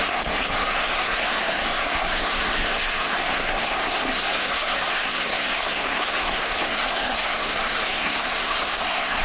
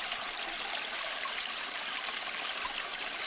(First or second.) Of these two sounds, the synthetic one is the first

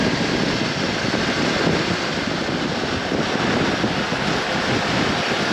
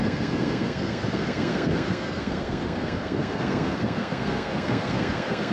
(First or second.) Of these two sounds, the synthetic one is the second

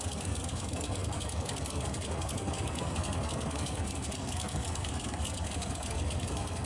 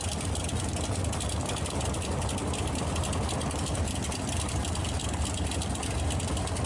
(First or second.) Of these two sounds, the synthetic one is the first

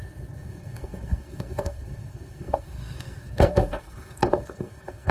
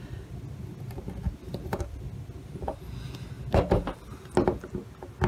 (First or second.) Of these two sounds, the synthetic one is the first